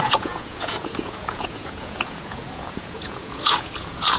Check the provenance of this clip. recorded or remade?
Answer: remade